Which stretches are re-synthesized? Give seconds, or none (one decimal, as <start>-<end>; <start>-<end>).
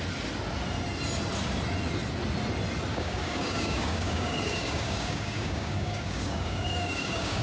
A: 2.9-7.4